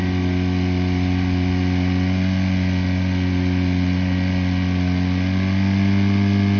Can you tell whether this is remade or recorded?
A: recorded